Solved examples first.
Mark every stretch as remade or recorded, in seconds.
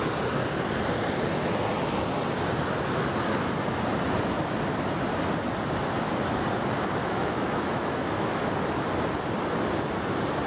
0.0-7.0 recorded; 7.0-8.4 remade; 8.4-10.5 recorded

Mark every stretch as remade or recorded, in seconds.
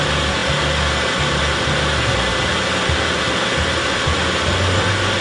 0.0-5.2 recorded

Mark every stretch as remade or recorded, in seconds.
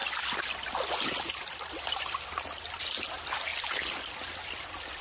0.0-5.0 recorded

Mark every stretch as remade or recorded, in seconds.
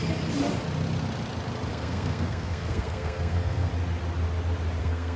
0.0-1.7 recorded; 1.7-3.7 remade; 3.7-4.8 recorded; 4.8-5.2 remade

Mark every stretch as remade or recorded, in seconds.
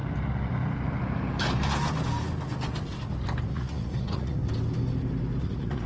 0.0-3.5 recorded; 3.5-4.4 remade; 4.4-5.4 recorded; 5.4-5.9 remade